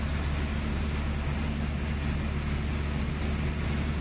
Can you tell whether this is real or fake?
real